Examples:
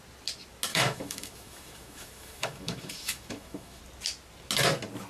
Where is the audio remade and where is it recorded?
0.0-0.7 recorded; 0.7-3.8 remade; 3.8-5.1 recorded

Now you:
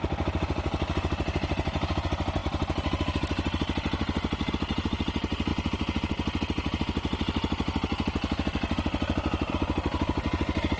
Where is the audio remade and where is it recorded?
0.0-10.8 recorded

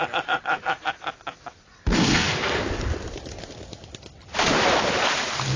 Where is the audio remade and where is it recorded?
0.0-1.9 recorded; 1.9-2.6 remade; 2.6-5.6 recorded